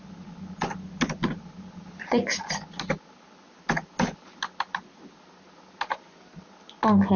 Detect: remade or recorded recorded